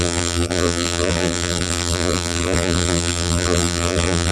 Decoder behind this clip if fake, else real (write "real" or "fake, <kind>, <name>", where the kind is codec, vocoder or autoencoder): fake, vocoder, BigVGAN v2